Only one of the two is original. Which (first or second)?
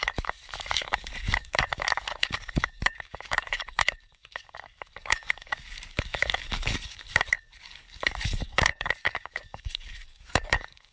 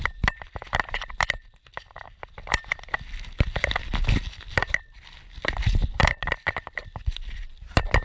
second